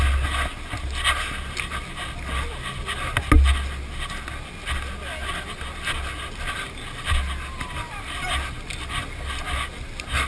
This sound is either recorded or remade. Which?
recorded